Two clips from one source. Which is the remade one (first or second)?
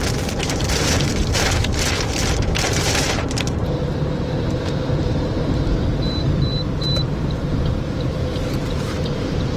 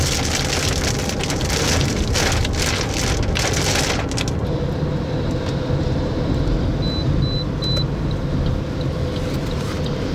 first